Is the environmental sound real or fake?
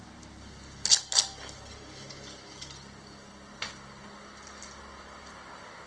real